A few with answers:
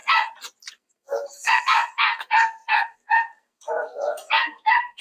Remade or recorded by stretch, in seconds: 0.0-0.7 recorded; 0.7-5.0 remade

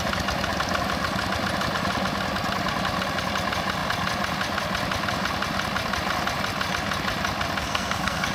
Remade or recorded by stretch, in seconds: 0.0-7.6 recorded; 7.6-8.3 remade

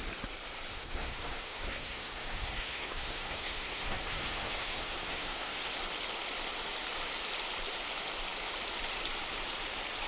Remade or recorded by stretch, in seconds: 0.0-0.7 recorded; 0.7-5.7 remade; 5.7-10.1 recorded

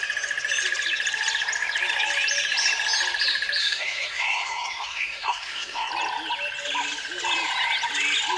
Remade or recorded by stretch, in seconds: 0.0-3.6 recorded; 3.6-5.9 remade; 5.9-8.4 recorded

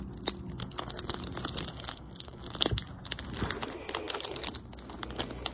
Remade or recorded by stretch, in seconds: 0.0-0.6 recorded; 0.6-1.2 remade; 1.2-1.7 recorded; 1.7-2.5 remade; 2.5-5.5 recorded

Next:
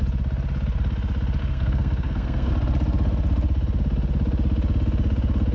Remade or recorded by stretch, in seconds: 0.0-1.4 recorded; 1.4-2.5 remade; 2.5-5.5 recorded